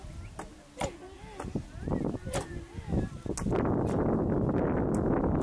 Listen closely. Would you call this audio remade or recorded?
recorded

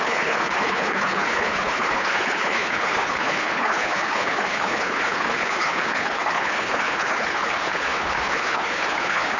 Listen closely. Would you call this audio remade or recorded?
remade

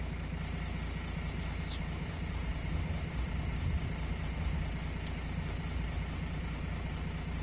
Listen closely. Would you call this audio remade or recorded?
recorded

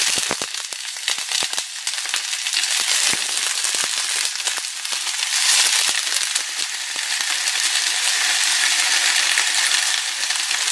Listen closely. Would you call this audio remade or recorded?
recorded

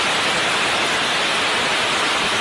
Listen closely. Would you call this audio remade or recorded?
remade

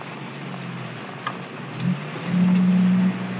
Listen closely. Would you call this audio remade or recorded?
recorded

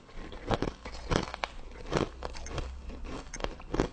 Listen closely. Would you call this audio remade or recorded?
recorded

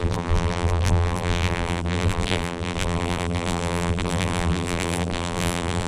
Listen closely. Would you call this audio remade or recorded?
remade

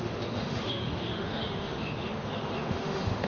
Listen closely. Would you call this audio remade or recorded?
remade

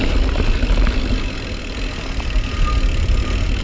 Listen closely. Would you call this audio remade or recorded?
recorded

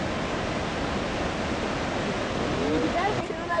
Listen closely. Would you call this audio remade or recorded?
recorded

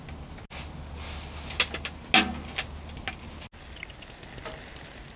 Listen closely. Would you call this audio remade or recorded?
recorded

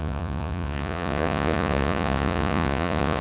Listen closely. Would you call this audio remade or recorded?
remade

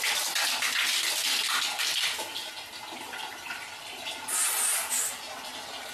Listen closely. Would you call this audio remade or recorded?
recorded